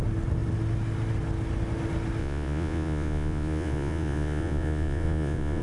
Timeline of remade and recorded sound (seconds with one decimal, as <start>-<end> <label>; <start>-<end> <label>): 0.0-2.2 recorded; 2.2-5.6 remade